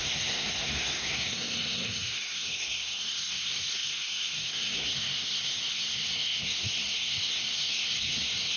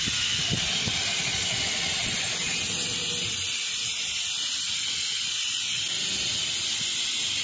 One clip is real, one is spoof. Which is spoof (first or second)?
first